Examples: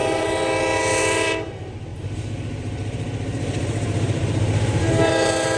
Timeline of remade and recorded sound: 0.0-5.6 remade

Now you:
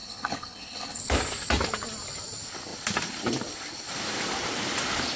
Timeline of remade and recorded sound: 0.0-1.0 remade; 1.0-5.2 recorded

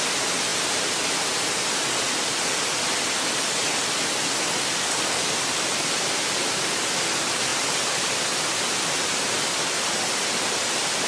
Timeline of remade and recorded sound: 0.0-11.1 recorded

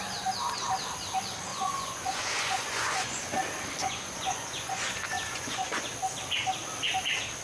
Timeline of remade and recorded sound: 0.0-1.5 recorded; 1.5-3.2 remade; 3.2-3.8 recorded; 3.8-5.9 remade; 5.9-7.4 recorded

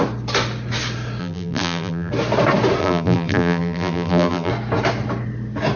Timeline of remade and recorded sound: 0.0-1.2 recorded; 1.2-2.1 remade; 2.1-2.8 recorded; 2.8-4.5 remade; 4.5-5.8 recorded

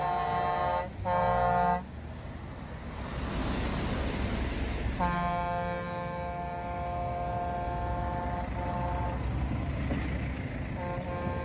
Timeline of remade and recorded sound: 0.0-3.4 recorded; 3.4-4.3 remade; 4.3-11.4 recorded

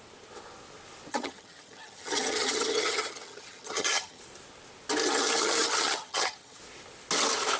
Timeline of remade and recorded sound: 0.0-1.1 recorded; 1.1-4.2 remade; 4.2-5.0 recorded; 5.0-6.6 remade; 6.6-7.6 recorded

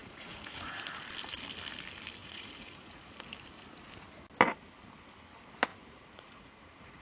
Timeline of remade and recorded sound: 0.0-1.0 remade; 1.0-2.2 recorded; 2.2-3.1 remade; 3.1-5.7 recorded; 5.7-7.0 remade